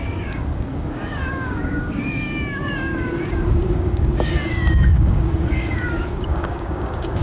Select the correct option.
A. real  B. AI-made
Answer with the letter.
B